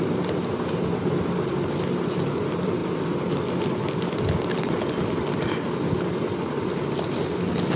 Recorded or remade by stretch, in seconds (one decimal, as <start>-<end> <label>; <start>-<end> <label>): 0.0-7.8 recorded